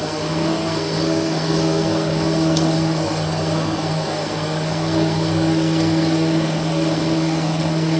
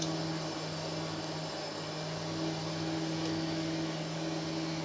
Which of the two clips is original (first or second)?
second